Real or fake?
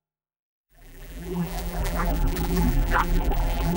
fake